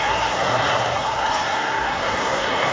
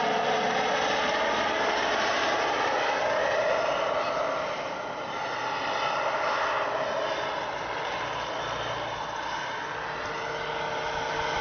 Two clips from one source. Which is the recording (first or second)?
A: second